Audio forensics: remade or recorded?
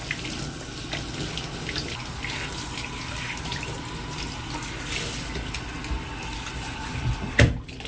recorded